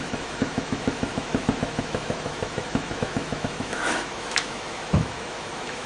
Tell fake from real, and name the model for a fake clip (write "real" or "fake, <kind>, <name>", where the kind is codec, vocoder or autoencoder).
fake, autoencoder, DAC-VAE